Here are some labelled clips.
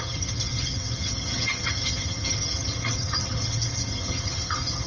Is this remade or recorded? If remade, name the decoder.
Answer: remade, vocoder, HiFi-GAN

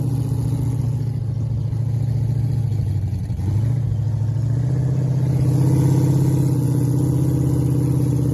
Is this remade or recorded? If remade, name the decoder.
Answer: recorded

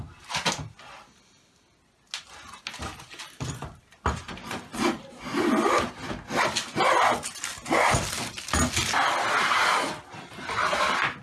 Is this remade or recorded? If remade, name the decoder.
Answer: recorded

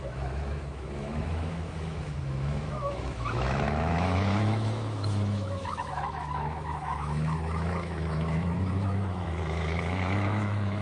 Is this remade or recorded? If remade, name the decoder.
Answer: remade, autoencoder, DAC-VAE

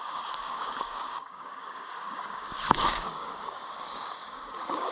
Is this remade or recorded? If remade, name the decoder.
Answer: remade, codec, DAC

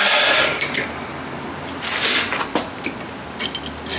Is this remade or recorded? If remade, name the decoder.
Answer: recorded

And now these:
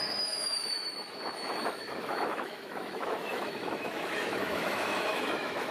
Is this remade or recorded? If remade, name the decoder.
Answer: remade, autoencoder, DAC-VAE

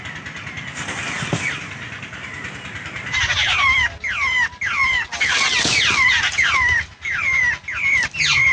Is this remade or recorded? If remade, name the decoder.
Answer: recorded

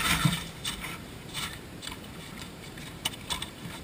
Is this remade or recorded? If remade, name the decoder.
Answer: remade, vocoder, BigVGAN v2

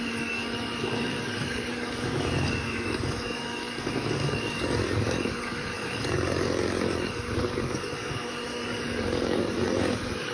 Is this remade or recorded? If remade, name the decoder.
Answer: remade, codec, DAC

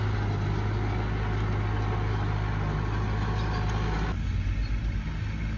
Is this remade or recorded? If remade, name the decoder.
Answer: recorded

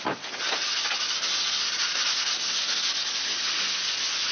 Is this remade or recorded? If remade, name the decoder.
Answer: recorded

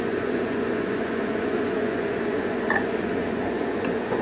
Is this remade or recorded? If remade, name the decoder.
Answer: remade, vocoder, Vocos